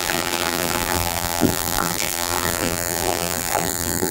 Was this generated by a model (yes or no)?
yes